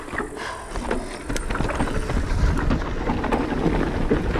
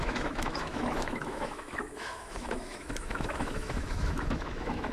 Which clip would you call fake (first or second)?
second